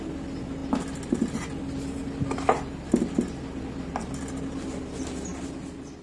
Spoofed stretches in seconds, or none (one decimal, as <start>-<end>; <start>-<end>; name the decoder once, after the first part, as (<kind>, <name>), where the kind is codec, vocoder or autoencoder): none